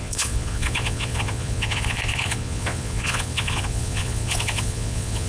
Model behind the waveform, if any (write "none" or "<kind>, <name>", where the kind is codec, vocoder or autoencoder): vocoder, Vocos